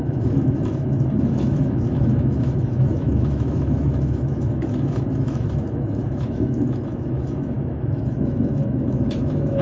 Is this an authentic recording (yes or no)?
no